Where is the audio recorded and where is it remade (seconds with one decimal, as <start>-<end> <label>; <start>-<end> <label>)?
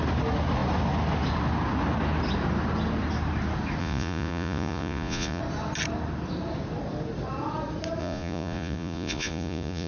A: 0.0-3.8 recorded; 3.8-5.4 remade; 5.4-8.0 recorded; 8.0-9.9 remade